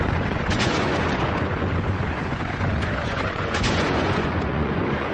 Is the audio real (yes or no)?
no